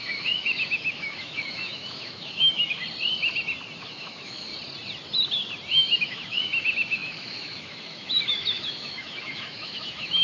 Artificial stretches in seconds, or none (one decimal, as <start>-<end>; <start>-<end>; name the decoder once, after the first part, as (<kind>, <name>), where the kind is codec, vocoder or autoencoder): 0.0-2.8 (autoencoder, DAC-VAE); 3.8-4.5; 5.7-10.2